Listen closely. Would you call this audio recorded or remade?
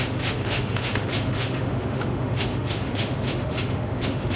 remade